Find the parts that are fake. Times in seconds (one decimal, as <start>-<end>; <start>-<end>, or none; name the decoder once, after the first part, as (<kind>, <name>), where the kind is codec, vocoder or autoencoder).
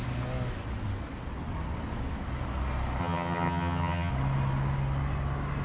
3.0-4.1 (vocoder, HiFi-GAN)